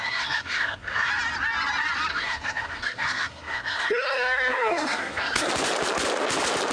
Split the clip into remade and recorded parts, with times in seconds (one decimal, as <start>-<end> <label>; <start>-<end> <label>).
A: 0.0-1.1 remade; 1.1-2.1 recorded; 2.1-5.5 remade; 5.5-6.7 recorded